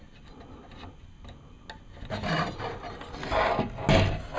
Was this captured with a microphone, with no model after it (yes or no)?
yes